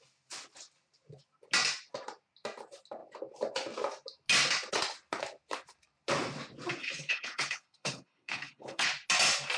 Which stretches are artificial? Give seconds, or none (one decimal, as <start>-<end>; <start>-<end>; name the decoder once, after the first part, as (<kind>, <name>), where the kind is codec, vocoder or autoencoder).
6.8-8.9 (codec, HILCodec)